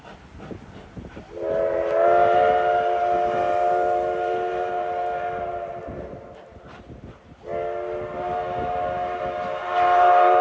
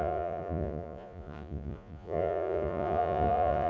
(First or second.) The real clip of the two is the first